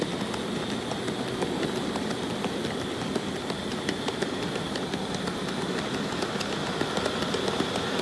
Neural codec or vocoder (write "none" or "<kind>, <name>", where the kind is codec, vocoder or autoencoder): none